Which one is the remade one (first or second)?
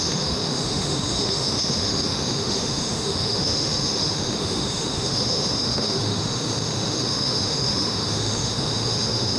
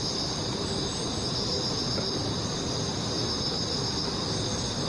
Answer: first